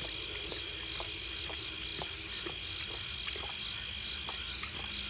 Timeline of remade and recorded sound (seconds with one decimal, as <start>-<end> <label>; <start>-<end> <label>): 0.0-5.1 recorded

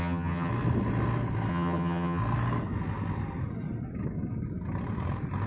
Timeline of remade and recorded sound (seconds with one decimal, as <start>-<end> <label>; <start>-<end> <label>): 0.0-0.5 remade; 0.5-1.5 recorded; 1.5-2.2 remade; 2.2-5.5 recorded

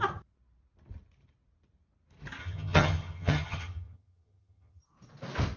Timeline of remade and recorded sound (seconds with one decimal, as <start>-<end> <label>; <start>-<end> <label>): 0.0-2.4 recorded; 2.4-4.8 remade; 4.8-5.6 recorded

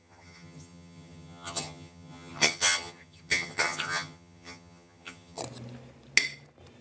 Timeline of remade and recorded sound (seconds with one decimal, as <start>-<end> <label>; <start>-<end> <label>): 0.0-5.4 remade; 5.4-6.8 recorded

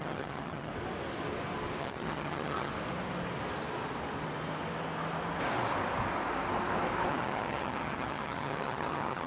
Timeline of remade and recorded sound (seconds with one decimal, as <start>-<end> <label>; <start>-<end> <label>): 0.0-0.7 remade; 0.7-1.8 recorded; 1.8-2.7 remade; 2.7-7.1 recorded; 7.1-9.3 remade